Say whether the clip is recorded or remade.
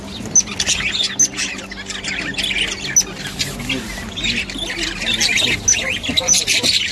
recorded